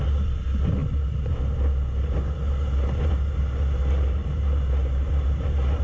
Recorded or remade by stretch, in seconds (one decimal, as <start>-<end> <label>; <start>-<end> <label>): 0.0-5.8 recorded